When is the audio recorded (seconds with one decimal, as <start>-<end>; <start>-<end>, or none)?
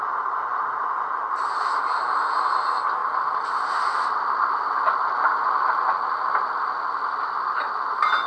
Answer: 0.0-8.3